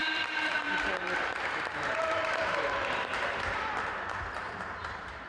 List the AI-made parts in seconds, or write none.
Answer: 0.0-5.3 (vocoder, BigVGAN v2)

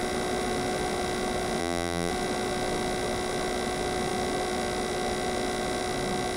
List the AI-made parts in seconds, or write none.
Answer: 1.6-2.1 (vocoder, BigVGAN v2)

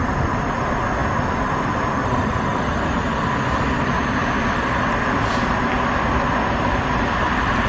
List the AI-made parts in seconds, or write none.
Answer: none

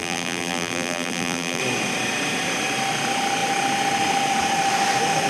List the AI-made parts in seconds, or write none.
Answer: 0.0-1.6 (vocoder, BigVGAN v2)

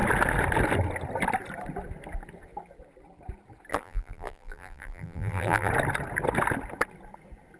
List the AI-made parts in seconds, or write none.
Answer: 3.7-5.7 (vocoder, BigVGAN v2)

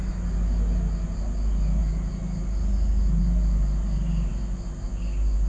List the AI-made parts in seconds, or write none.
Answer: none

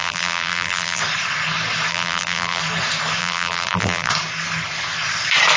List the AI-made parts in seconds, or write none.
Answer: 0.0-1.0 (vocoder, BigVGAN v2); 1.9-2.6; 3.2-4.1